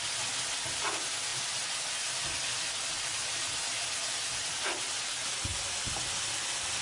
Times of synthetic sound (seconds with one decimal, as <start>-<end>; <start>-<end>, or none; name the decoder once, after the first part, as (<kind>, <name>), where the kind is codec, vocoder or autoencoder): 1.3-4.3 (vocoder, BigVGAN v2)